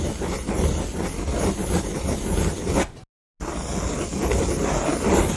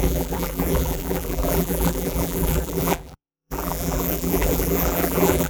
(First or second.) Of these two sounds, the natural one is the first